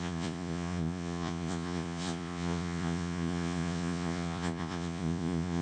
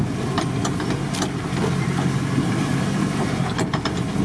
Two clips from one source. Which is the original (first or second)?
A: second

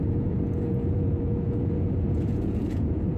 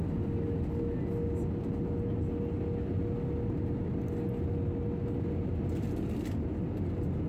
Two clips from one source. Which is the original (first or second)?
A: second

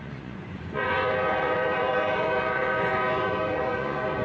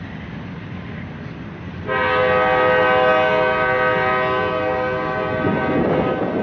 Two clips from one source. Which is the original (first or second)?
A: second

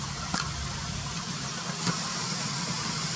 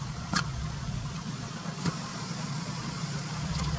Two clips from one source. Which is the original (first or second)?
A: first